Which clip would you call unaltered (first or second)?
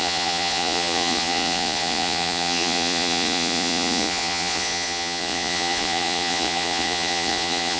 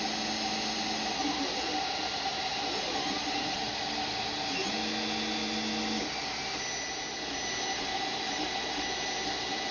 second